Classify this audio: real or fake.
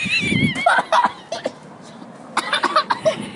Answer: real